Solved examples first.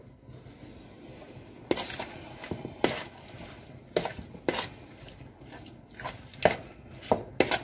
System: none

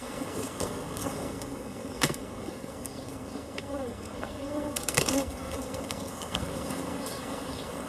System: codec, SNAC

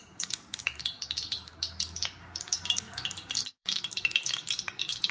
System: codec, DAC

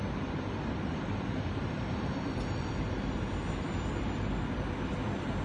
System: vocoder, BigVGAN v2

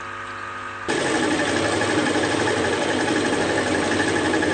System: none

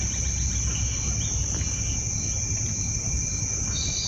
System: none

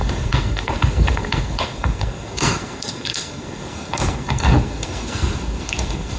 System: codec, SNAC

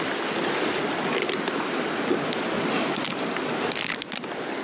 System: none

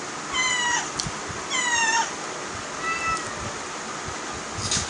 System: none